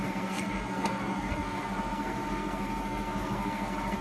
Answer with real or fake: fake